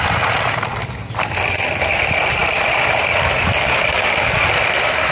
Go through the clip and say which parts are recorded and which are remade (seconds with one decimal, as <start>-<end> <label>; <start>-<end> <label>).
0.0-5.1 remade